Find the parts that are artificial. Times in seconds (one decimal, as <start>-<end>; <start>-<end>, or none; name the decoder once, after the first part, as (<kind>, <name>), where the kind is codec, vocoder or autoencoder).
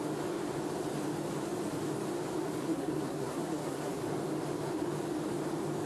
2.6-4.0 (codec, SNAC)